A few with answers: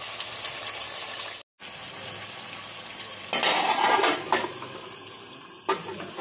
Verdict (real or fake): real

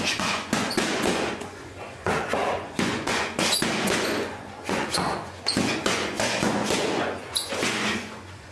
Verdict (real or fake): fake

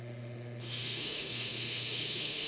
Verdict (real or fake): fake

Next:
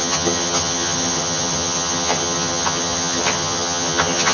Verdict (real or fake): fake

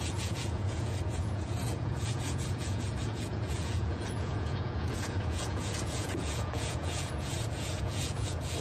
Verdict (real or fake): fake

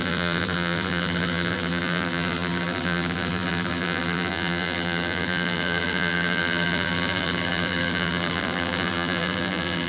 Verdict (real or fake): fake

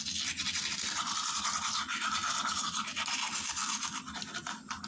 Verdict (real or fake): real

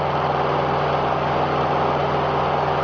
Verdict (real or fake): real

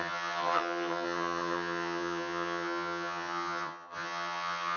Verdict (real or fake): fake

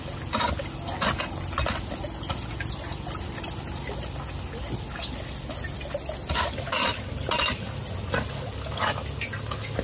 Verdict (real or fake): real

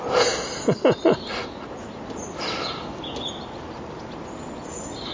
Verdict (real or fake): real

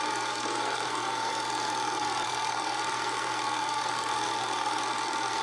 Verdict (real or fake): fake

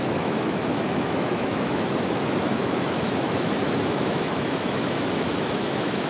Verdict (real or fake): fake